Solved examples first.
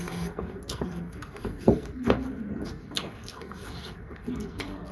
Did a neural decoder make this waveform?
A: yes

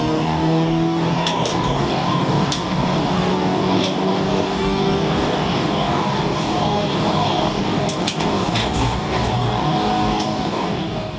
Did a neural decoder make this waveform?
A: yes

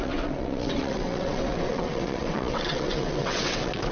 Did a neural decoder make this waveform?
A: yes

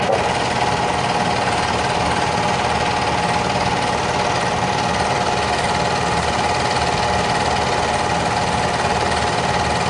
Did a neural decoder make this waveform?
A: no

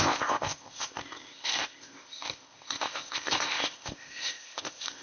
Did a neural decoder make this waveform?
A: yes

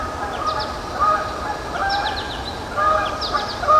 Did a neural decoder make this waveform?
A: no